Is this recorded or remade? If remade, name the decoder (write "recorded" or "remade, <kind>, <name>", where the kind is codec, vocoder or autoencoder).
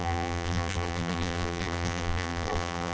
remade, vocoder, BigVGAN v2